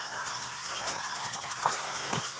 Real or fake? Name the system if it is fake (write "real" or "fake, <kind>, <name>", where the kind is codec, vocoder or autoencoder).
fake, codec, SNAC